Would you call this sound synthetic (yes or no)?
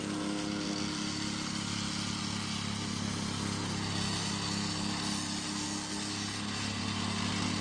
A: no